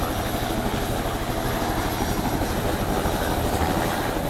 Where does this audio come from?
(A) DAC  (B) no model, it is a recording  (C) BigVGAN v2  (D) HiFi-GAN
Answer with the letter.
C